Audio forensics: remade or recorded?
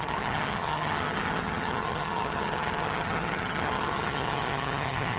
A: remade